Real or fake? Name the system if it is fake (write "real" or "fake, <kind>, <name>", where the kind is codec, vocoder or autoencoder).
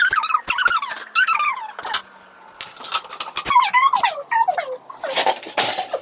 real